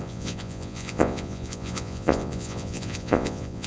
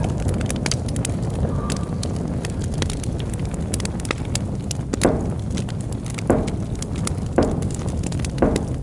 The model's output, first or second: first